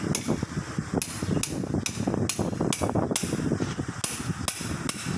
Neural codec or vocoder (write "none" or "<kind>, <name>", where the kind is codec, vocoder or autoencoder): none